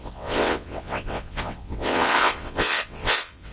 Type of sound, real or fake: fake